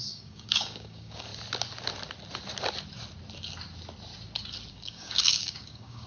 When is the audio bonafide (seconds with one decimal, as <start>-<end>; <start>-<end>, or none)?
1.3-4.7